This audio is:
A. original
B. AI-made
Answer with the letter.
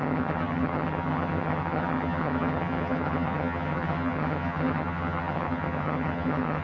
B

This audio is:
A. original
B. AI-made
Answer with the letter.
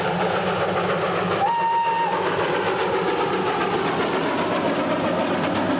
A